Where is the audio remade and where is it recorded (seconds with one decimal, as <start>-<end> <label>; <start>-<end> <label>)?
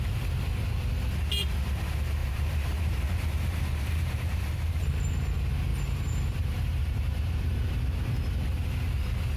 0.0-2.2 recorded; 2.2-4.9 remade; 4.9-5.7 recorded; 5.7-7.8 remade; 7.8-9.4 recorded